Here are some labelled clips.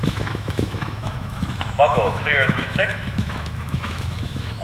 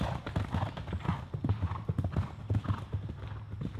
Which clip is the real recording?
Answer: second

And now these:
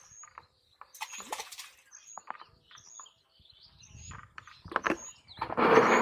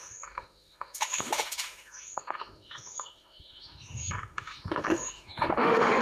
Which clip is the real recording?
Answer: first